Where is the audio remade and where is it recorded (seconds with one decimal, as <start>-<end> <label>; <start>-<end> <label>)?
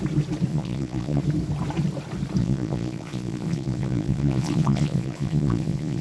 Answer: 0.0-0.5 recorded; 0.5-1.2 remade; 1.2-2.4 recorded; 2.4-6.0 remade